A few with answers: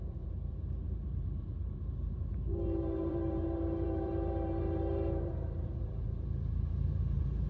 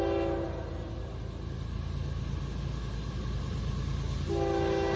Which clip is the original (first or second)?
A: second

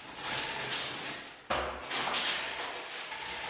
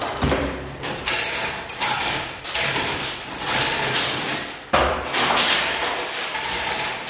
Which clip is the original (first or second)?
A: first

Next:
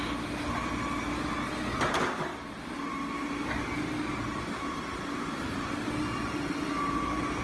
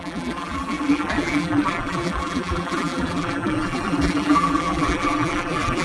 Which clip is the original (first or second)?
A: first